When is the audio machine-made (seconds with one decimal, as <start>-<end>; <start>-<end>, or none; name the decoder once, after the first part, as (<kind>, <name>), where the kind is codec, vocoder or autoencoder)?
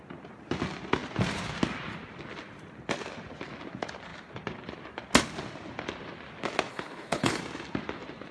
6.7-7.4 (codec, HILCodec)